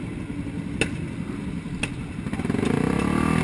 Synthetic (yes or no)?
no